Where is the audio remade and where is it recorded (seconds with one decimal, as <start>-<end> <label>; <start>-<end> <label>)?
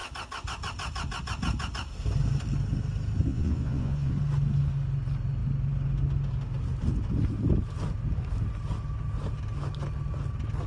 0.0-3.3 recorded; 3.3-4.1 remade; 4.1-10.7 recorded